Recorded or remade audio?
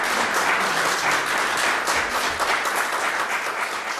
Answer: recorded